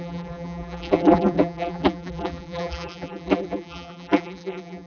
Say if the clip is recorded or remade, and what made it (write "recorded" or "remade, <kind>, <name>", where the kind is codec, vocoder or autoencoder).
remade, vocoder, BigVGAN v2